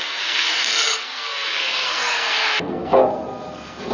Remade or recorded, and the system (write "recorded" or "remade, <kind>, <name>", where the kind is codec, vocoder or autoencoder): remade, codec, SNAC